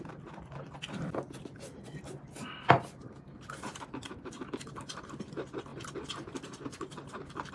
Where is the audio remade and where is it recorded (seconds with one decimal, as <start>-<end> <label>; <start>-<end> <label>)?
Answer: 0.0-7.5 recorded